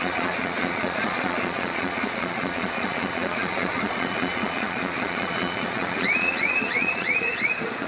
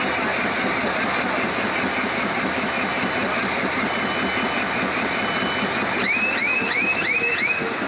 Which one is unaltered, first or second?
second